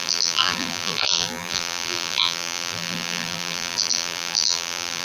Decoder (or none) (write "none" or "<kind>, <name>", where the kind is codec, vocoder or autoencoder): vocoder, BigVGAN v2